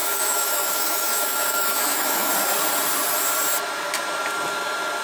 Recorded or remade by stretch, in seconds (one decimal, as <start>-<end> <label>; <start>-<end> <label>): 0.0-2.3 remade; 2.3-5.0 recorded